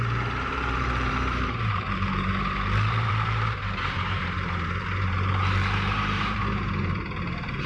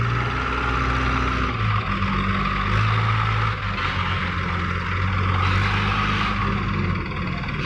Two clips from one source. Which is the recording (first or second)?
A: second